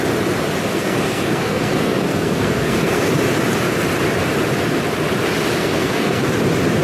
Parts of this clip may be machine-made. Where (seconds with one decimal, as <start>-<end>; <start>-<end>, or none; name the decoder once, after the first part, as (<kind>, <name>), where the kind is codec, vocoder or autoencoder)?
0.7-3.1 (codec, SNAC); 5.6-6.3